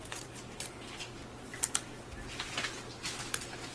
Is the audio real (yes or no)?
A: yes